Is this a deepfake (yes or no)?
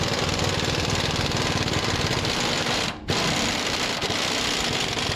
no